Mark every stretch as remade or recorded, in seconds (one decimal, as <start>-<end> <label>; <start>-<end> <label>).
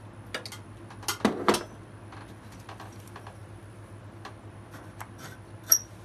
0.0-6.0 recorded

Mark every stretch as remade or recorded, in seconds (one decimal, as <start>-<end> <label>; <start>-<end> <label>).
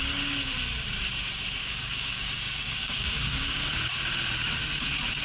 0.0-1.6 recorded; 1.6-3.7 remade; 3.7-5.2 recorded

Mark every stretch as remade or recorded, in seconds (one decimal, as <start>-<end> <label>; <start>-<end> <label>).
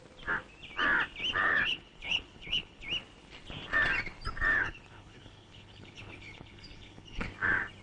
0.0-1.4 recorded; 1.4-2.8 remade; 2.8-4.5 recorded; 4.5-7.3 remade; 7.3-7.8 recorded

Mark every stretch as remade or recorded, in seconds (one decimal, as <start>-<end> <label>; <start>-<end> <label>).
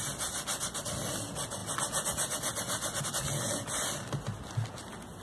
0.0-5.2 recorded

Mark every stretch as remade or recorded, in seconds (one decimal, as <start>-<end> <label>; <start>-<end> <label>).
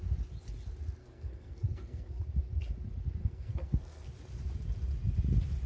0.0-1.0 recorded; 1.0-2.2 remade; 2.2-3.2 recorded; 3.2-4.1 remade; 4.1-5.7 recorded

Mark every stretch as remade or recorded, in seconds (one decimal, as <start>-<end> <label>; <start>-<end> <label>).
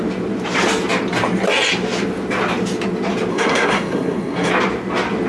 0.0-3.3 recorded; 3.3-4.5 remade; 4.5-5.3 recorded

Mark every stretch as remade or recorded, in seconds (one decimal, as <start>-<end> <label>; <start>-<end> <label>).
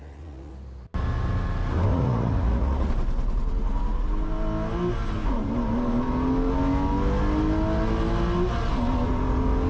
0.0-0.5 remade; 0.5-1.9 recorded; 1.9-2.9 remade; 2.9-9.7 recorded